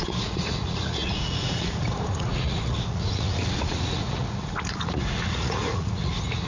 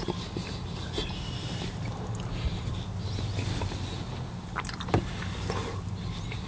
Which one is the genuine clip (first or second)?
second